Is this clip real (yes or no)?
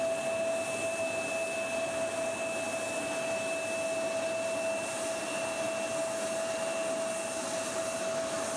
yes